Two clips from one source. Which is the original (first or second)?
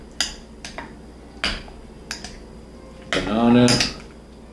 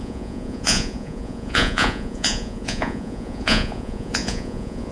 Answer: first